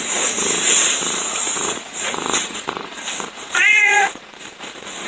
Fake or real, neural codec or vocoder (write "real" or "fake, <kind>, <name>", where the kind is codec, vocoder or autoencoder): fake, vocoder, Vocos